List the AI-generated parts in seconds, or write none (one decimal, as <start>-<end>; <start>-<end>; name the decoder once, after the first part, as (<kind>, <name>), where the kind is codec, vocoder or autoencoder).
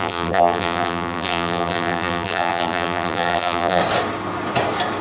0.0-3.8 (vocoder, BigVGAN v2)